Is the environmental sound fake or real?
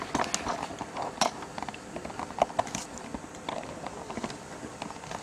real